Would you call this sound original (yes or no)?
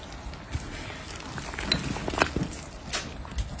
yes